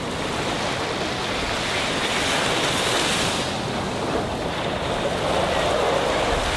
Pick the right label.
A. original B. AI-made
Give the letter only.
A